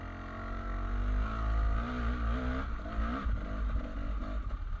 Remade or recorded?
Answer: recorded